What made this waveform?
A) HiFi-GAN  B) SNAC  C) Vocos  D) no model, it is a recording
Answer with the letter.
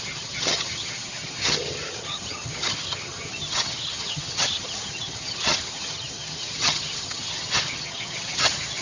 A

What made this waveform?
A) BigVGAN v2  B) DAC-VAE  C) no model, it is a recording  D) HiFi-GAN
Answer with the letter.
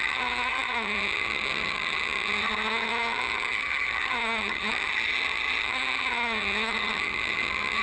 D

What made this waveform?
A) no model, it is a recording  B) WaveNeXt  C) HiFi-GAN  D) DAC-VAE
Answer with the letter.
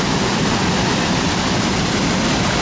A